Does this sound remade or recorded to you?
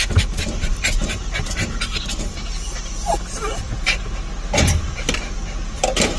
remade